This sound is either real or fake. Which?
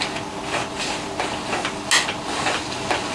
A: real